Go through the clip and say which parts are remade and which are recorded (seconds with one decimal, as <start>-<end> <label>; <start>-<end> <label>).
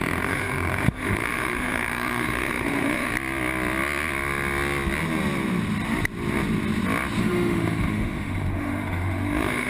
0.0-3.1 remade; 3.1-7.2 recorded; 7.2-9.7 remade